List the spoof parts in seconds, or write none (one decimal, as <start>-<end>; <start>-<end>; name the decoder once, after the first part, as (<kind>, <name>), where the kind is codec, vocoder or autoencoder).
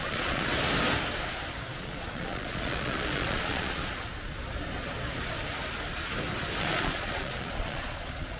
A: 0.0-0.5 (vocoder, Vocos); 1.8-3.8; 6.6-8.4